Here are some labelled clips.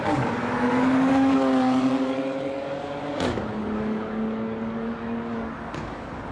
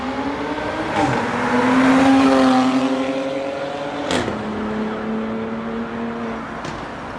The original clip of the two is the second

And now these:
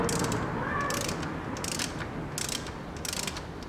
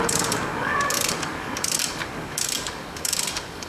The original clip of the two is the first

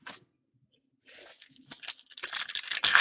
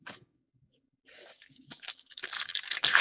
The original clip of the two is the first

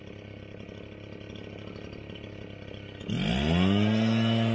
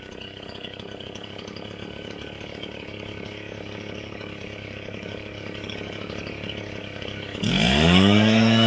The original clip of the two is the first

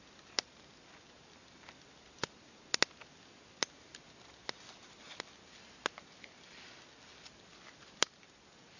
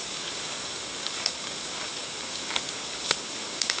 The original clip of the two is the first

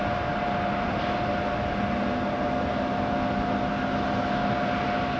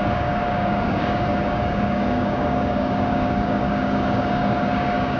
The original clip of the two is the first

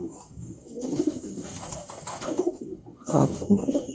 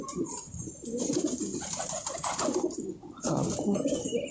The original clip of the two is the second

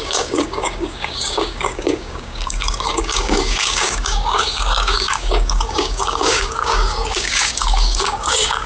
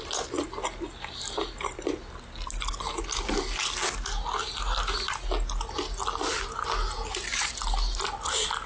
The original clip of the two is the second